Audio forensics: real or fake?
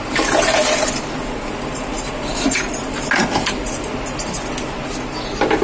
real